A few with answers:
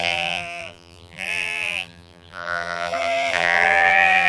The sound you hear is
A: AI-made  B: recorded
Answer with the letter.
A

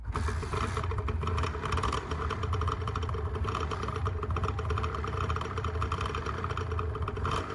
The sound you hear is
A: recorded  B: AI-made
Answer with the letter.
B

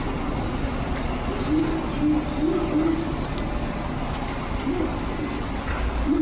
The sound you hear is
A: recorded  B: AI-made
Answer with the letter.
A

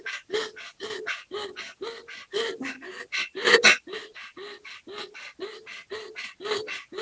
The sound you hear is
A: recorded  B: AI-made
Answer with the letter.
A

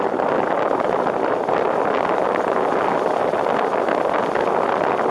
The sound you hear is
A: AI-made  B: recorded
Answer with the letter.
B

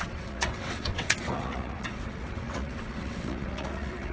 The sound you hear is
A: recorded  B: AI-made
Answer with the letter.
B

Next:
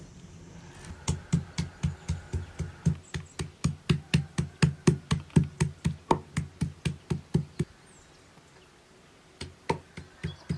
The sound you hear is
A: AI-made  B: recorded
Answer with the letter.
B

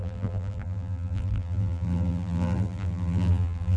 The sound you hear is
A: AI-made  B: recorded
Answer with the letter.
A